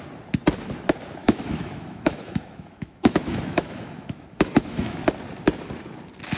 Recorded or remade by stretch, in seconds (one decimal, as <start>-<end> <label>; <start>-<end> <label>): 0.0-1.2 recorded; 1.2-5.0 remade; 5.0-6.4 recorded